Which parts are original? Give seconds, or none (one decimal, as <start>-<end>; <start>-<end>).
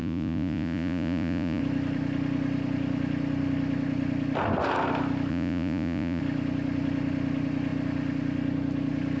1.6-5.3; 6.2-9.2